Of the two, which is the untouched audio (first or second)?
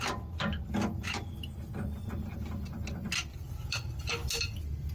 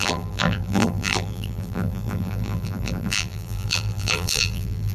first